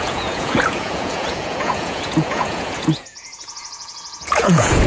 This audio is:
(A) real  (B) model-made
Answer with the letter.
B